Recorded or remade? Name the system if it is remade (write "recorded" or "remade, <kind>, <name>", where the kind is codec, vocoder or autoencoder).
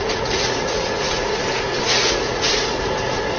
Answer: remade, vocoder, Vocos